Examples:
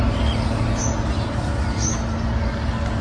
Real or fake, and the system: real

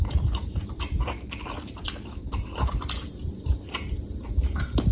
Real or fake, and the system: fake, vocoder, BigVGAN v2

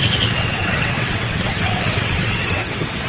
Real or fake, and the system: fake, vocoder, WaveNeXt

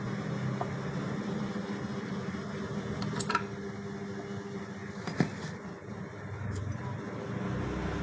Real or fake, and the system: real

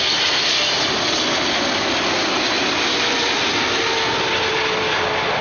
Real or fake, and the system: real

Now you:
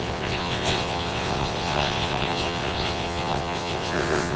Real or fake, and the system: fake, vocoder, WaveNeXt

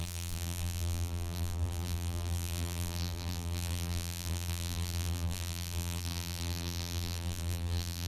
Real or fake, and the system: fake, vocoder, BigVGAN v2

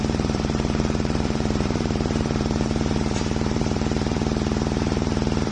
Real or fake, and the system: fake, vocoder, BigVGAN v2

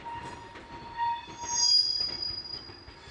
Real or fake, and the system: real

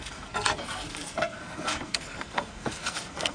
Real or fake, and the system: fake, codec, SNAC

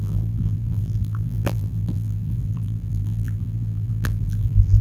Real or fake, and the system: fake, vocoder, BigVGAN v2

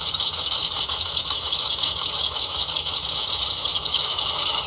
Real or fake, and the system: fake, autoencoder, DAC-VAE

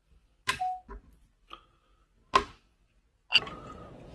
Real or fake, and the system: real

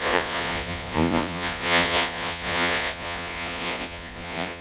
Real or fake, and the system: fake, vocoder, Vocos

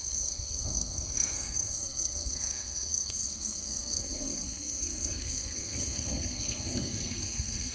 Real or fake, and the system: fake, codec, SNAC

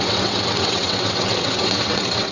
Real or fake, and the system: fake, vocoder, WaveNeXt